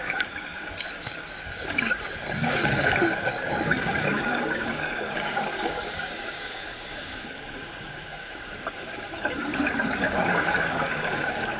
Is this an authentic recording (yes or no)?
no